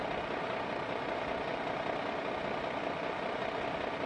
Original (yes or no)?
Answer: yes